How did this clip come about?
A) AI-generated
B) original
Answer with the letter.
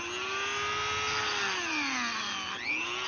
B